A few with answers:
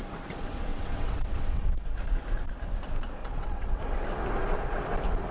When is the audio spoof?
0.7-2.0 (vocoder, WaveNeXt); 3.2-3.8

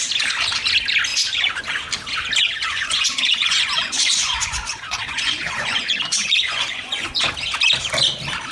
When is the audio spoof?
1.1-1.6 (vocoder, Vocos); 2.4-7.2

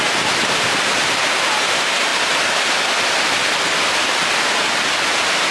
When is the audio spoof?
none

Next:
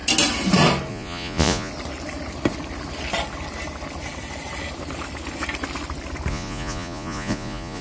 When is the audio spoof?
0.9-1.7 (vocoder, Vocos); 6.3-7.8

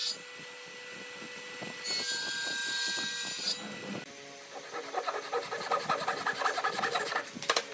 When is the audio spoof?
none

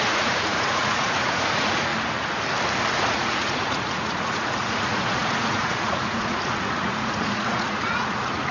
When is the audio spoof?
0.0-1.9 (vocoder, Vocos); 2.9-8.5